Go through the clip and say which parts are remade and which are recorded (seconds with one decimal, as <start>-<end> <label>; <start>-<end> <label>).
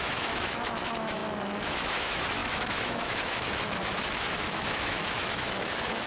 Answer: 0.0-6.1 remade